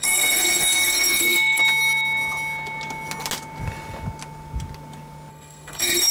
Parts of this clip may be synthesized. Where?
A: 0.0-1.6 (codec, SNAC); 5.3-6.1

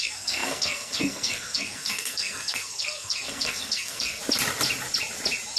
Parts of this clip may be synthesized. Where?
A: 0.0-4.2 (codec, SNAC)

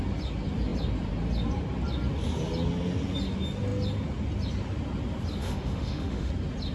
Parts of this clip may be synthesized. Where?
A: 5.4-6.3 (autoencoder, DAC-VAE)